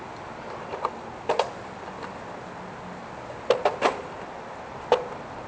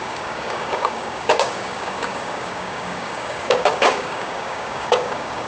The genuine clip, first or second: first